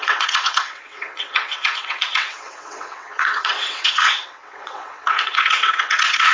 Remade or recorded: remade